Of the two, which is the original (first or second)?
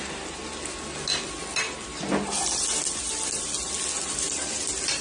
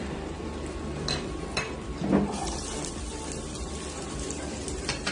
first